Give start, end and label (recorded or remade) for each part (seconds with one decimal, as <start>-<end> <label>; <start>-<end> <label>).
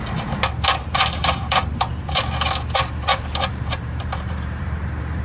0.0-0.7 recorded; 0.7-1.9 remade; 1.9-3.1 recorded; 3.1-4.6 remade; 4.6-5.2 recorded